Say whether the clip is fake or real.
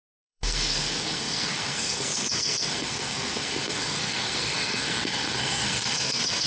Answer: fake